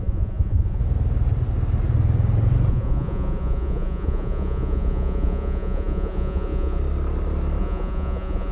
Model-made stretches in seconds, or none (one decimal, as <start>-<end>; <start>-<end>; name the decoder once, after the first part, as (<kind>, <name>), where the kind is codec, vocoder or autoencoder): 0.0-0.8 (vocoder, Vocos); 2.7-6.8; 7.6-8.5